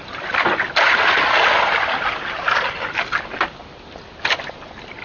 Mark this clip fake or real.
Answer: real